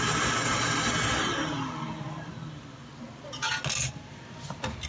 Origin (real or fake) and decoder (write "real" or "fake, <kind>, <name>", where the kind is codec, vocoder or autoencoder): real